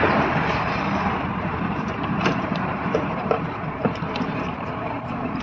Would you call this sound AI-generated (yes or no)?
yes